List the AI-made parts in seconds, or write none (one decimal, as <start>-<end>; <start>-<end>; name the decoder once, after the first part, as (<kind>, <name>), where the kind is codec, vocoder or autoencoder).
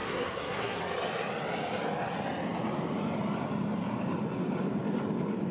0.0-0.8 (codec, SNAC)